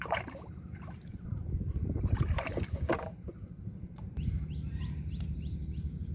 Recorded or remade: remade